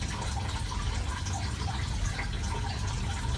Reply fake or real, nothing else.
real